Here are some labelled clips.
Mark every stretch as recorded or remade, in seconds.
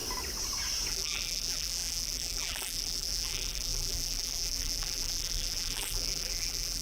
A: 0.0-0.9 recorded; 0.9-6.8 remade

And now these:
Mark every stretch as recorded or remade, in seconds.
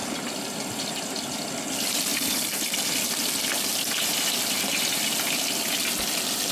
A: 0.0-1.5 remade; 1.5-6.5 recorded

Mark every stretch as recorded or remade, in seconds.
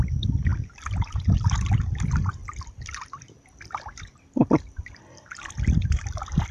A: 0.0-0.5 remade; 0.5-1.8 recorded; 1.8-6.5 remade